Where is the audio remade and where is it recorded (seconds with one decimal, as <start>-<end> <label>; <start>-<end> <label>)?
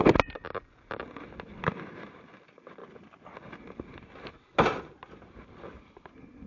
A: 0.0-6.5 recorded